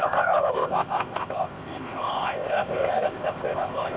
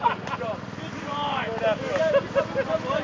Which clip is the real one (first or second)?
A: second